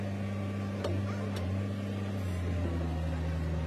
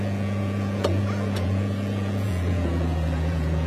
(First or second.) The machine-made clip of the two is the second